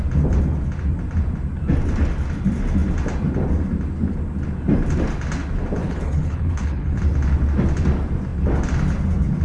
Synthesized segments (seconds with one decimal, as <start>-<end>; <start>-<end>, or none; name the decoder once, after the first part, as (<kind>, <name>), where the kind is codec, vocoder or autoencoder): 5.8-7.0 (codec, HILCodec)